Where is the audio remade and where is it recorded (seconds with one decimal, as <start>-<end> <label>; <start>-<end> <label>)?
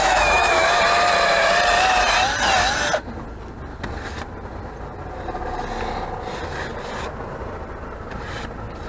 0.0-0.8 remade; 0.8-8.9 recorded